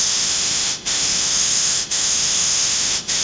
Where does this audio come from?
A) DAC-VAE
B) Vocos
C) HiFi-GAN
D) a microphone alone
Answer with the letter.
A